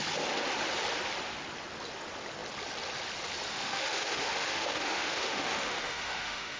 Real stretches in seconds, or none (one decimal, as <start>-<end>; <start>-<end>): 0.0-3.5